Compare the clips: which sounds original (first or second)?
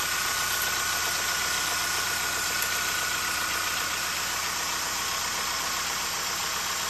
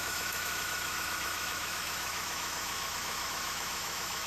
first